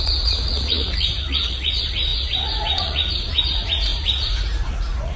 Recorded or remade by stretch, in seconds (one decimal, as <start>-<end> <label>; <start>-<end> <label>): 0.0-5.2 remade